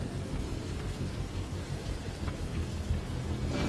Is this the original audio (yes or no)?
no